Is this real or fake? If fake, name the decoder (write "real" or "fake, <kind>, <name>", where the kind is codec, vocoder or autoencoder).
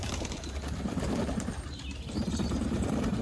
real